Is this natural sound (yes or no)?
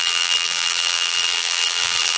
no